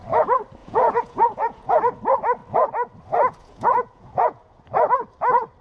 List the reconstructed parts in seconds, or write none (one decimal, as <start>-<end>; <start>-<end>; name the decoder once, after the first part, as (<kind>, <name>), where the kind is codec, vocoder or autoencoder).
0.6-2.0 (vocoder, Vocos); 3.4-4.6